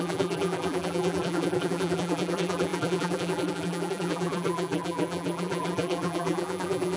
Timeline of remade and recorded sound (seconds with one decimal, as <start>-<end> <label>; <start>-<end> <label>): 0.0-7.0 remade